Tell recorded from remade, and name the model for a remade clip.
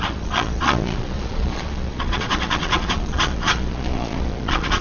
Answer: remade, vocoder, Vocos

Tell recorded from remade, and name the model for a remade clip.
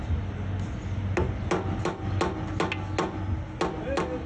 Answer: recorded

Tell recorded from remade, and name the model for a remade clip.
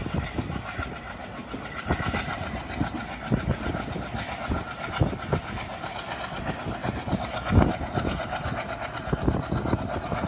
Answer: recorded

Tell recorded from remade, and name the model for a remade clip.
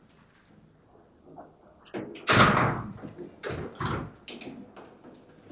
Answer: recorded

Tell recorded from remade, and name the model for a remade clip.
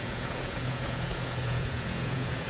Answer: remade, vocoder, Vocos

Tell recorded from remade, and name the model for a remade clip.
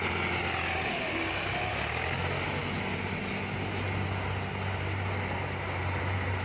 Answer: recorded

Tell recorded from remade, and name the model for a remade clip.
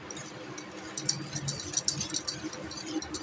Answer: recorded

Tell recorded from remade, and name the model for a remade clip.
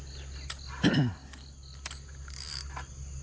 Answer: recorded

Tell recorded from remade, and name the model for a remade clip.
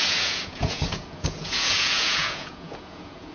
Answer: remade, vocoder, Vocos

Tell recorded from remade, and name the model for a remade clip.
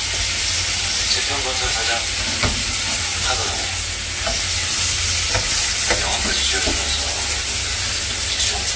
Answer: recorded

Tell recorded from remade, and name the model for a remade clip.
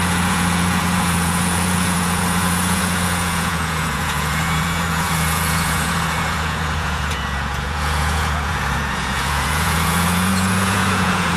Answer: remade, vocoder, Vocos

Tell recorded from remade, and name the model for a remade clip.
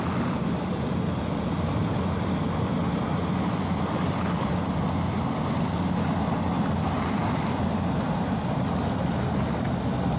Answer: recorded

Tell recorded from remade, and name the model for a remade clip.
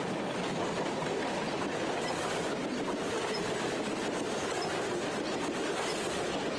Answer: recorded